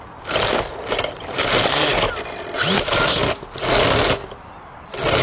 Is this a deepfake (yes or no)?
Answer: no